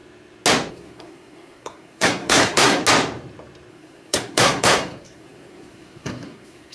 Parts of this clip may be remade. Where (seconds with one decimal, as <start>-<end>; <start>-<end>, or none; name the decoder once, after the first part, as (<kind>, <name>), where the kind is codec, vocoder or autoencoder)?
0.7-2.8 (codec, SNAC); 3.7-6.7